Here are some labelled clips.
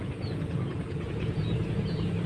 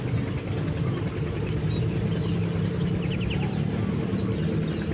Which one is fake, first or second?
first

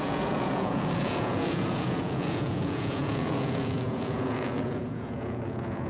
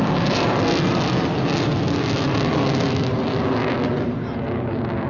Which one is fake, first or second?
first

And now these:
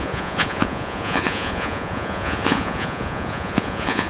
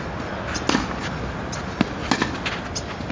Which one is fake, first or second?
first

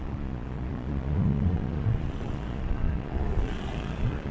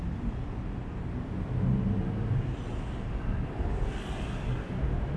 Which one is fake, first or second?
first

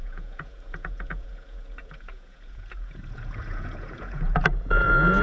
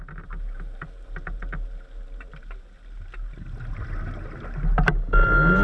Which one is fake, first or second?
first